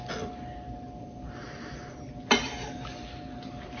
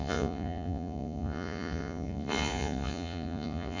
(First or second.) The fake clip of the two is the second